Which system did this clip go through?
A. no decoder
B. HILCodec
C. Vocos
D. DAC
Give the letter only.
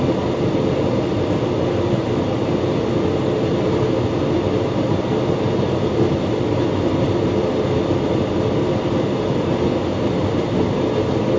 A